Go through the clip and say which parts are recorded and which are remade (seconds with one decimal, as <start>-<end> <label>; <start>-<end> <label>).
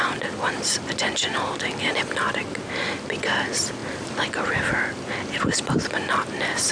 0.0-6.7 recorded